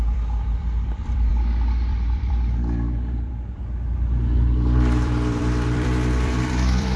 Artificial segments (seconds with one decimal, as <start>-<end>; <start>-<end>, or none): 0.0-7.0